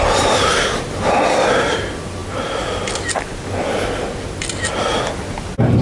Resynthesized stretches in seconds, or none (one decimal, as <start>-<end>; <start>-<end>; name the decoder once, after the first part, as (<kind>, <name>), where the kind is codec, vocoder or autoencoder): none